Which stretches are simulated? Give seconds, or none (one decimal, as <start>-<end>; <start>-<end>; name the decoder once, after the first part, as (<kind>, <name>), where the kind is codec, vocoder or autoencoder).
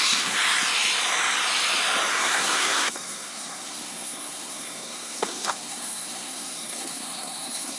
0.0-0.4 (codec, SNAC); 2.1-7.8